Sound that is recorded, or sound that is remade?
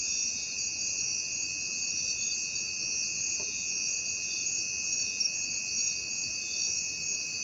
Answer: recorded